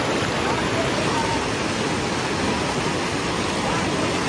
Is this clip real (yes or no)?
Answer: yes